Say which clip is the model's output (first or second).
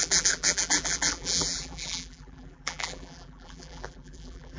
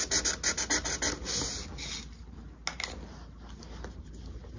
first